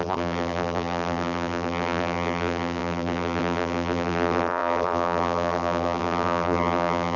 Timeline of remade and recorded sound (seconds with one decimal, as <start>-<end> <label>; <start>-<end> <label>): 0.0-7.2 remade